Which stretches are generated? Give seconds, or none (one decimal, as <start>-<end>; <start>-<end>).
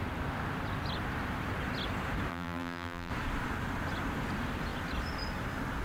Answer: 2.3-3.1